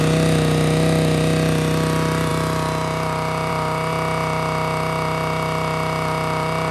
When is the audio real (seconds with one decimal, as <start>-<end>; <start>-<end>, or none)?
0.0-6.7